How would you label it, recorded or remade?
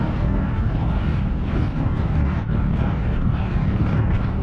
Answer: remade